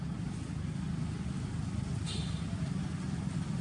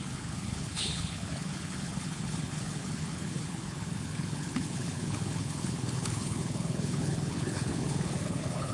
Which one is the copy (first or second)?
second